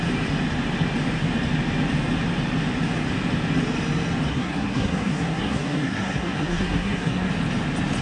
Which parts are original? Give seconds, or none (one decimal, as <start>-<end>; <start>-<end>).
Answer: 0.0-4.3; 7.3-8.0